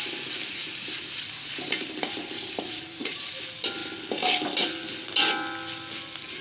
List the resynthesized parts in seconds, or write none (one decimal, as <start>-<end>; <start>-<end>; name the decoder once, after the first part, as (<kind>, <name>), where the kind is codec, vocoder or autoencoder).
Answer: 0.6-3.3 (vocoder, BigVGAN v2)